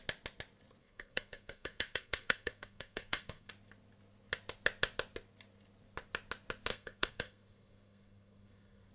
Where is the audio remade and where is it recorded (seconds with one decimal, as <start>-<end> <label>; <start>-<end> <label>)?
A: 0.0-0.8 recorded; 0.8-3.5 remade; 3.5-6.7 recorded; 6.7-8.9 remade